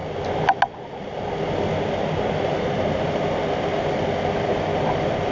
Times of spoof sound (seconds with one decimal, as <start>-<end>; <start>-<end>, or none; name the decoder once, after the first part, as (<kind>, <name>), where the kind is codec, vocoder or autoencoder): none